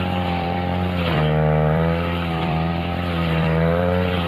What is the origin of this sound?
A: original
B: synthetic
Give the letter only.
B